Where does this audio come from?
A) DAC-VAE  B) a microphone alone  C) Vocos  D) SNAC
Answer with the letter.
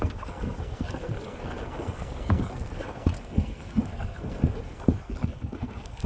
D